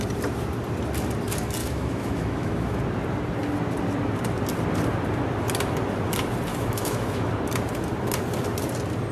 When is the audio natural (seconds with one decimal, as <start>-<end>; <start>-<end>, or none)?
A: 0.0-1.6; 2.8-6.5; 7.3-9.1